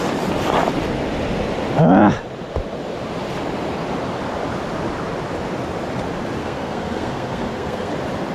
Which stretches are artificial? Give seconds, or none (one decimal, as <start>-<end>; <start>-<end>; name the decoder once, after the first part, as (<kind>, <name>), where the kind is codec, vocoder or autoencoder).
6.4-7.9 (codec, SNAC)